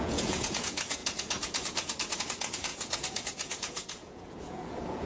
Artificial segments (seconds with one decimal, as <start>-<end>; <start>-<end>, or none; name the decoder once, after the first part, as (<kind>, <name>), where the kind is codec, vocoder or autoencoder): 0.0-5.1 (vocoder, Vocos)